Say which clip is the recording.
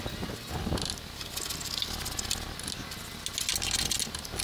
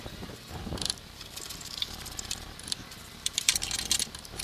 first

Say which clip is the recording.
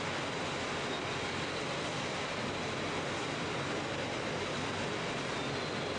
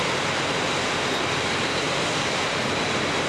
first